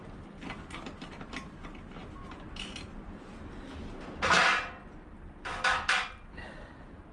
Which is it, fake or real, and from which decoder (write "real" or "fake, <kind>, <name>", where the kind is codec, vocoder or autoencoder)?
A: real